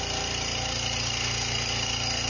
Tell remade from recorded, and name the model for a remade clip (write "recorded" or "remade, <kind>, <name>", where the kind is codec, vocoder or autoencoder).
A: recorded